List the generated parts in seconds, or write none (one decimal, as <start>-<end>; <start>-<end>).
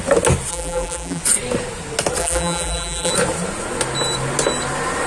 0.5-1.2; 2.2-3.1